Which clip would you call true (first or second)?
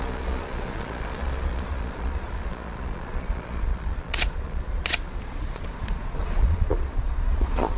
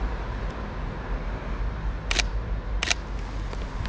second